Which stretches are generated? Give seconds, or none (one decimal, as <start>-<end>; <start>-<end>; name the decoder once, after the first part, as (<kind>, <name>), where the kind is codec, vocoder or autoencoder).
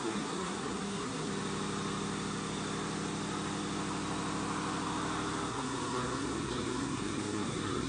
0.0-1.3 (codec, SNAC); 5.5-7.9